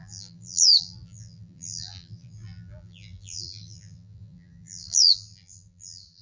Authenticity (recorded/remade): remade